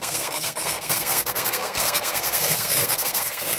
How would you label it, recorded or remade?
remade